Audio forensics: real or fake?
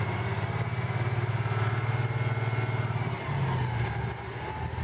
real